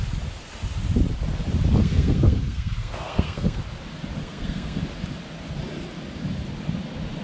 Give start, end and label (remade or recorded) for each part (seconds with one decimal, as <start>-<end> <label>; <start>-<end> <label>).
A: 0.0-1.8 recorded; 1.8-3.6 remade; 3.6-4.2 recorded; 4.2-4.8 remade; 4.8-7.2 recorded